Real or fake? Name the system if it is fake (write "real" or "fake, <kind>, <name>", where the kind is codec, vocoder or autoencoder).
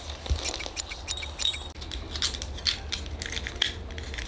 real